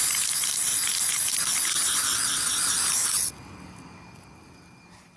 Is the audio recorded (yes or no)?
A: yes